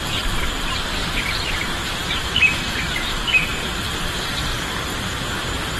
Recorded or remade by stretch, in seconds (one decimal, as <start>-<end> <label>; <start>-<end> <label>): 0.0-4.5 remade; 4.5-5.2 recorded; 5.2-5.8 remade